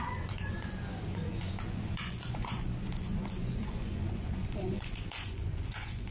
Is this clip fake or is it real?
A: fake